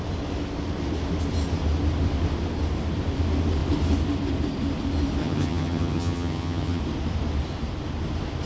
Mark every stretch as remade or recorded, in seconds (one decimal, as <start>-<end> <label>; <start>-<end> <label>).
0.0-5.2 recorded; 5.2-6.8 remade; 6.8-8.5 recorded